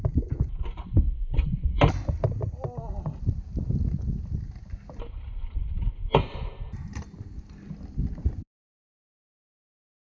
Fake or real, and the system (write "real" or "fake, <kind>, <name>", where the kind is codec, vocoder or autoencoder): real